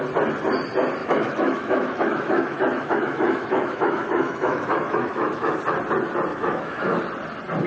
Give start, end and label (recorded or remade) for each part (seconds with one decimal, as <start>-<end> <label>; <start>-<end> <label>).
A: 0.0-1.0 recorded; 1.0-5.6 remade; 5.6-6.3 recorded; 6.3-7.0 remade; 7.0-7.7 recorded